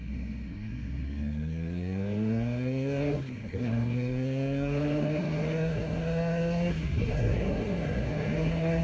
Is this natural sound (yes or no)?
no